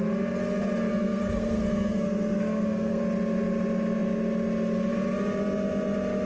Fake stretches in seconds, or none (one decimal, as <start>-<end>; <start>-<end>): 0.9-3.0